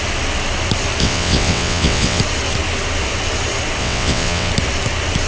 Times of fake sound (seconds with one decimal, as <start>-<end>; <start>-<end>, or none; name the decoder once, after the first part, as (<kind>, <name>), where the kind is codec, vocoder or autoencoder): 1.0-2.2 (vocoder, WaveNeXt); 3.8-4.5